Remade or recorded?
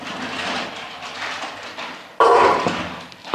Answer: recorded